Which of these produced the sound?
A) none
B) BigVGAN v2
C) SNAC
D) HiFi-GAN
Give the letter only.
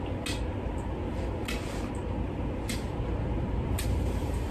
A